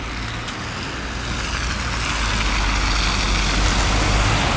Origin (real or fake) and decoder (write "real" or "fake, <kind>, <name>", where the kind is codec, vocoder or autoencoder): real